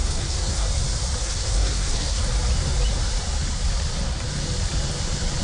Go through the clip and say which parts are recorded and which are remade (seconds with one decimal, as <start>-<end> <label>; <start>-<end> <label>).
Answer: 0.0-0.7 remade; 0.7-1.2 recorded; 1.2-2.2 remade; 2.2-5.4 recorded